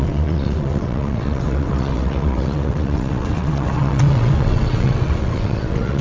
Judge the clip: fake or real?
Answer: fake